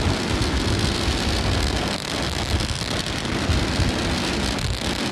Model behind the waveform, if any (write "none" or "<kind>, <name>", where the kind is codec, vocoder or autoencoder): none